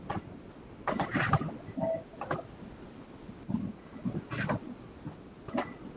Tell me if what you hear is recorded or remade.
recorded